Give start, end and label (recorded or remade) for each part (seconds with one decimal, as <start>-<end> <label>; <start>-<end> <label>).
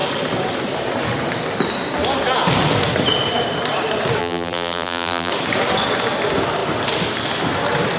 0.0-4.2 recorded; 4.2-5.3 remade; 5.3-8.0 recorded